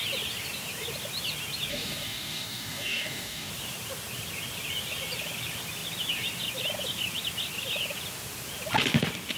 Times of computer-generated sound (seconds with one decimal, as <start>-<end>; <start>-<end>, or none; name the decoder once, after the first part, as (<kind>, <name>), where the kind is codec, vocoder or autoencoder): 1.7-3.5 (codec, DAC)